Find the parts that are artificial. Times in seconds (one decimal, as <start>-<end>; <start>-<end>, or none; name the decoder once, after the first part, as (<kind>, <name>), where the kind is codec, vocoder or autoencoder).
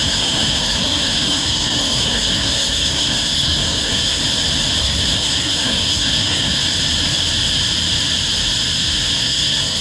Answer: 0.0-4.2 (codec, SNAC); 4.8-6.6; 9.2-9.8